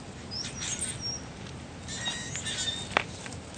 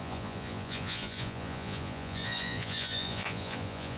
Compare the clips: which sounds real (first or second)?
first